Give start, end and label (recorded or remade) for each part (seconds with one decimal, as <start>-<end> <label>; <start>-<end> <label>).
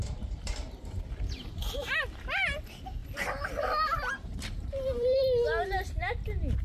0.0-3.0 remade; 3.0-4.1 recorded; 4.1-5.2 remade; 5.2-6.6 recorded